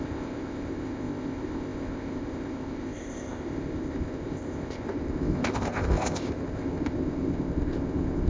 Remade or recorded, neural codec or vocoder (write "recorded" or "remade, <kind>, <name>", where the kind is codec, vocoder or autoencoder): remade, codec, ZipCodec